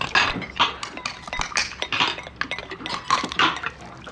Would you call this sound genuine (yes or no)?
yes